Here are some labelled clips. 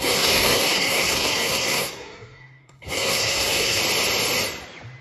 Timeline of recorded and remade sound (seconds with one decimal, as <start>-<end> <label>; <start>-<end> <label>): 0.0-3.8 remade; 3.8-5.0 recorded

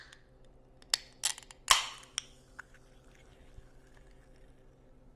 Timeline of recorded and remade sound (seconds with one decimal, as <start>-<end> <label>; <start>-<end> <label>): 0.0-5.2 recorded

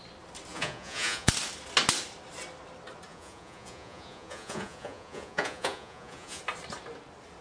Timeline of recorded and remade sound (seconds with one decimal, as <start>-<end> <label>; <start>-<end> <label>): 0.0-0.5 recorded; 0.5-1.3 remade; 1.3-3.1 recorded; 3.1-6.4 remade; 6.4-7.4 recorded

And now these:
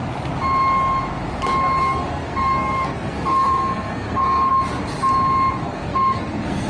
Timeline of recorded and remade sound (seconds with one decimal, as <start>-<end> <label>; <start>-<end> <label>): 0.0-1.8 recorded; 1.8-4.5 remade; 4.5-5.6 recorded; 5.6-6.7 remade

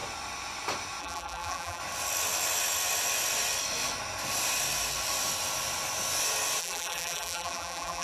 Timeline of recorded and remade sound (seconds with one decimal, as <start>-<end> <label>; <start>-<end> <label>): 0.0-1.0 recorded; 1.0-1.8 remade; 1.8-6.6 recorded; 6.6-8.0 remade

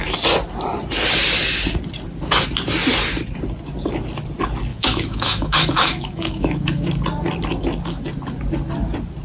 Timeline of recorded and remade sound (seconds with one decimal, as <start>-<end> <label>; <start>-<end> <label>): 0.0-4.7 recorded; 4.7-6.9 remade; 6.9-9.2 recorded

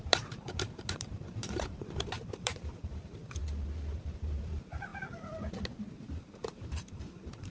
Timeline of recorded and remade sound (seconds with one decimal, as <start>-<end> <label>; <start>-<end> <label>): 0.0-3.4 remade; 3.4-4.0 recorded; 4.0-4.9 remade; 4.9-5.9 recorded; 5.9-7.5 remade